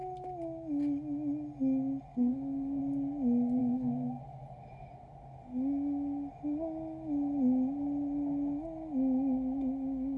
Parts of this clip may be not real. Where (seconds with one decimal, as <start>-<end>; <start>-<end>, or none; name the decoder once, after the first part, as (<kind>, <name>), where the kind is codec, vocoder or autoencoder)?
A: 2.1-2.8 (codec, SNAC); 3.6-4.2